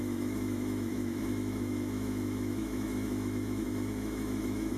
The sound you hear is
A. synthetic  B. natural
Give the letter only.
A